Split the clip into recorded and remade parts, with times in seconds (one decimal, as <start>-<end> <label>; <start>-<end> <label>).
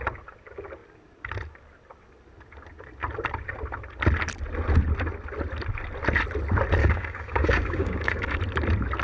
0.0-6.8 recorded; 6.8-8.4 remade; 8.4-9.0 recorded